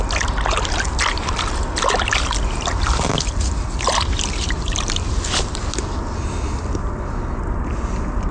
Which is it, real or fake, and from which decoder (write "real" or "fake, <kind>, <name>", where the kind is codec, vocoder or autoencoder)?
real